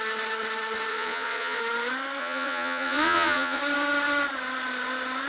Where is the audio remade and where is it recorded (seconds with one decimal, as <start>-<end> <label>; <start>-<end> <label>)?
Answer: 0.0-0.9 recorded; 0.9-1.6 remade; 1.6-2.2 recorded; 2.2-3.6 remade; 3.6-5.3 recorded